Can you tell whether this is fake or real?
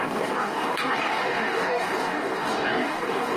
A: fake